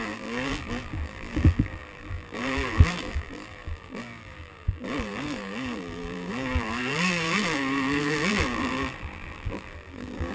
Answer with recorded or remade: remade